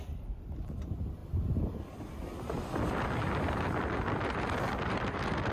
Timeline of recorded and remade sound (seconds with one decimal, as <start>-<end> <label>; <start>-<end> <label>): 0.0-5.5 recorded